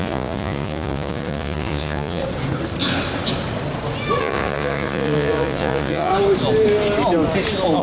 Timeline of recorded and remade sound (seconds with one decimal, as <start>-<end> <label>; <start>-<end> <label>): 0.0-2.2 remade; 2.2-4.2 recorded; 4.2-6.1 remade; 6.1-7.8 recorded